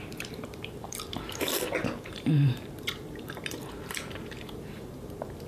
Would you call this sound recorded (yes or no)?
no